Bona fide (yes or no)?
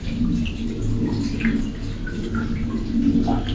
yes